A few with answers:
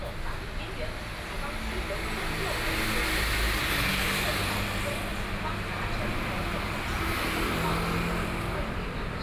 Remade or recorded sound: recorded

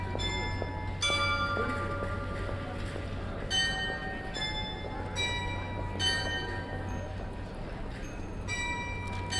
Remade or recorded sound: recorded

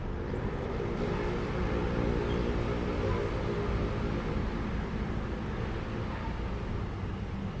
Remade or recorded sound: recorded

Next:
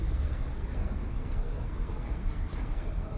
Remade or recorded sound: remade